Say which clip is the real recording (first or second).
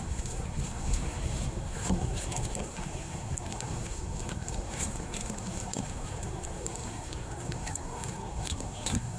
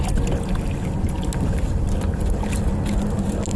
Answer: second